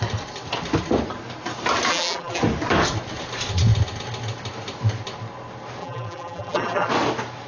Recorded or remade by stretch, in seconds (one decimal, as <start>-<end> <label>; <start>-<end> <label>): 0.0-1.9 recorded; 1.9-2.4 remade; 2.4-5.8 recorded; 5.8-6.9 remade; 6.9-7.5 recorded

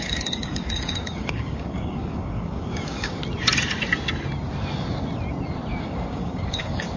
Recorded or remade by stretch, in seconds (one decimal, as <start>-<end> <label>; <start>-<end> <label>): 0.0-3.2 remade; 3.2-5.8 recorded; 5.8-7.0 remade

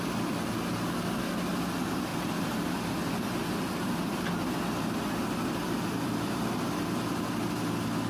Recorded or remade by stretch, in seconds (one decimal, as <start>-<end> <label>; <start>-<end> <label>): 0.0-2.1 recorded; 2.1-6.6 remade; 6.6-8.1 recorded

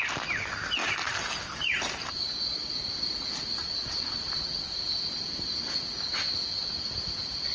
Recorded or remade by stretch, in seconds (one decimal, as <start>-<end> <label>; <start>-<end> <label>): 0.0-0.8 recorded; 0.8-2.3 remade; 2.3-7.5 recorded

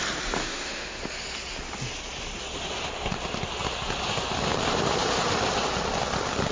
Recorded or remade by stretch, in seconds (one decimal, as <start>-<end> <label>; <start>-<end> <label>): 0.0-0.4 recorded; 0.4-1.0 remade; 1.0-6.5 recorded

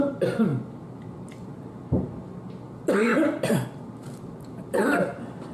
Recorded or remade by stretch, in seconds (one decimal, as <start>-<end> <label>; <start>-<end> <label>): 0.0-0.5 recorded; 0.5-2.1 remade; 2.1-3.1 recorded; 3.1-3.9 remade; 3.9-5.5 recorded

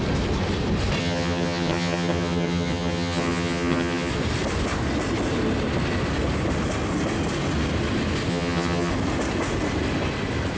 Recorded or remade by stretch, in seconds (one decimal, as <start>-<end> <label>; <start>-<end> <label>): 0.0-1.0 recorded; 1.0-4.1 remade; 4.1-8.3 recorded; 8.3-8.9 remade; 8.9-10.6 recorded

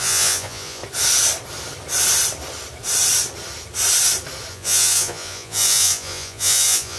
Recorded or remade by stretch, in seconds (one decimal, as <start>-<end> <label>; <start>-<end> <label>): 0.0-0.8 remade; 0.8-4.5 recorded; 4.5-7.0 remade